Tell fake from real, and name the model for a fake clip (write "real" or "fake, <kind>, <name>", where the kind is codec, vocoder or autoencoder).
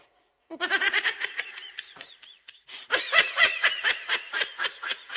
fake, vocoder, Vocos